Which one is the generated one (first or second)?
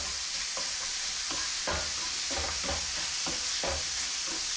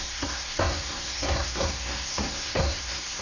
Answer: second